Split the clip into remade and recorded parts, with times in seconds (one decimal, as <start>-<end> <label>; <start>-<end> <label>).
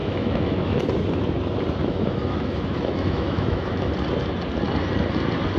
0.0-0.9 remade; 0.9-1.8 recorded; 1.8-3.9 remade; 3.9-5.6 recorded